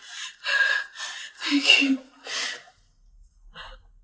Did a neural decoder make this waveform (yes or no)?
no